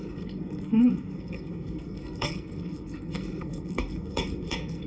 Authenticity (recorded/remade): remade